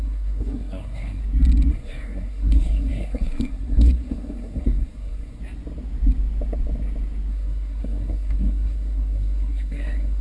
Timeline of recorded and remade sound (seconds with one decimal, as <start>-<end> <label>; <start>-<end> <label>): 0.0-1.2 remade; 1.2-1.7 recorded; 1.7-5.4 remade; 5.4-7.3 recorded; 7.3-10.2 remade